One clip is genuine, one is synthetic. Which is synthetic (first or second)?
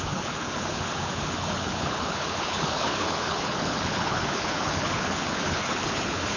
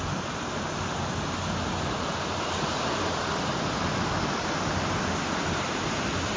first